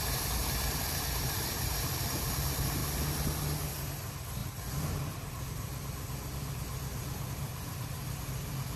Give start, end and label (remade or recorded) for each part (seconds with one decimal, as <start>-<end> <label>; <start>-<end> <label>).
0.0-2.8 remade; 2.8-3.7 recorded; 3.7-8.8 remade